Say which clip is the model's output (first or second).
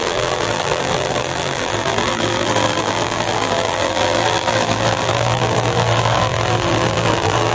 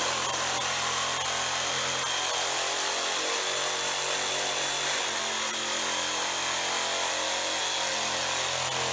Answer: first